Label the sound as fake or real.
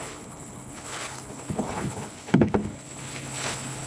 fake